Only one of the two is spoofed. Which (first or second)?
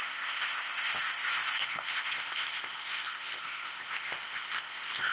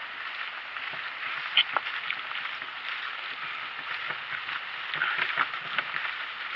first